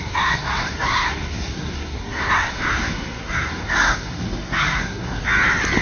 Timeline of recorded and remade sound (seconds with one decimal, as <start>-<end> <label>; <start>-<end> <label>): 0.0-5.2 remade; 5.2-5.8 recorded